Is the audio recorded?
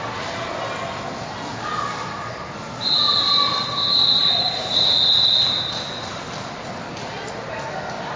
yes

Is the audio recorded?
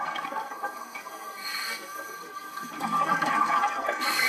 no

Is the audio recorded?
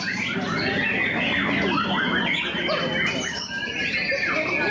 yes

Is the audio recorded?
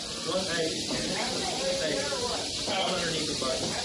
yes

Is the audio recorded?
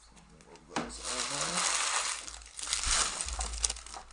yes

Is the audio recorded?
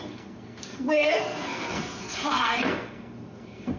no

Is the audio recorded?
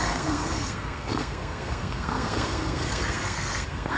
no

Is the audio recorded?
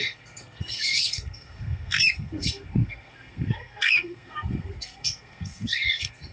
no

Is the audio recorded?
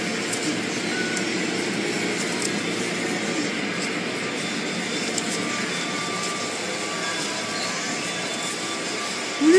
yes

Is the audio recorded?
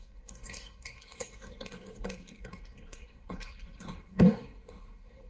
no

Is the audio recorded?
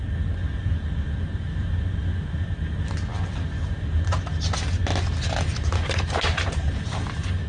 yes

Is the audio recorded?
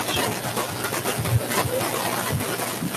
yes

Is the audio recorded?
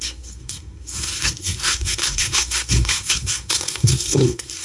no